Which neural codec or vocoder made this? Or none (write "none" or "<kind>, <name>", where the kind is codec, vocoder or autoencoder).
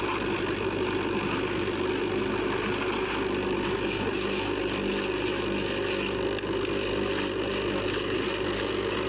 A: none